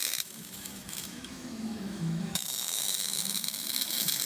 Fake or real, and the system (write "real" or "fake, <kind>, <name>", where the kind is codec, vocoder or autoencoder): fake, autoencoder, DAC-VAE